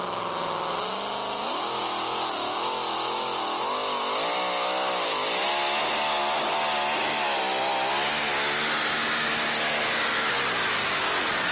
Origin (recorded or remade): recorded